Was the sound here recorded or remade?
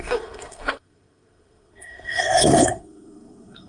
remade